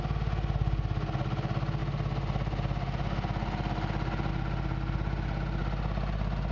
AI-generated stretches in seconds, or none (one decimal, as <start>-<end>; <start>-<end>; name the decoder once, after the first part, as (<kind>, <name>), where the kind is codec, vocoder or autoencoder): none